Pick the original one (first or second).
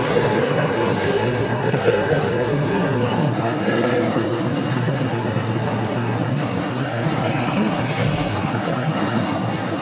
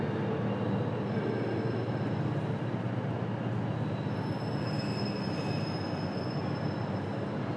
second